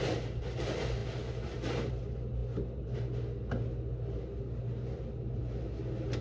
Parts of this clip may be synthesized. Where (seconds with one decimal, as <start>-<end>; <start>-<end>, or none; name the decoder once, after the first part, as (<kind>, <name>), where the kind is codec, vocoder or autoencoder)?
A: none